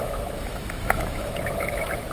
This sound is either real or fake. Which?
fake